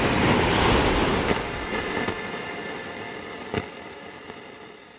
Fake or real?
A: real